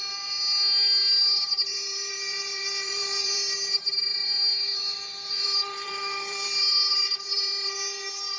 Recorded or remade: remade